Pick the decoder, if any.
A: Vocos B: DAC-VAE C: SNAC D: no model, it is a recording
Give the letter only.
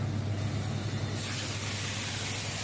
D